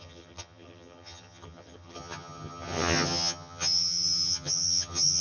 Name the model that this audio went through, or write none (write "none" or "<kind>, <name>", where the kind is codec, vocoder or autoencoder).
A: vocoder, HiFi-GAN